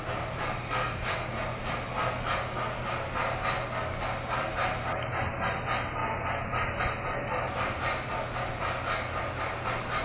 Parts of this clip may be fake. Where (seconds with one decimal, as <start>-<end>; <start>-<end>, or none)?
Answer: 0.8-1.3